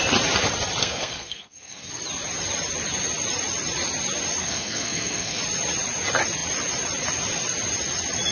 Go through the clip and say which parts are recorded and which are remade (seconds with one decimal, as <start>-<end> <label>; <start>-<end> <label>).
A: 0.0-0.8 recorded; 0.8-1.9 remade; 1.9-4.4 recorded; 4.4-5.4 remade; 5.4-8.3 recorded

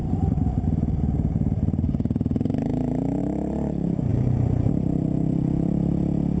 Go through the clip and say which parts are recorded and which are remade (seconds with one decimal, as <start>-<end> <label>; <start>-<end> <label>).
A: 0.0-6.4 remade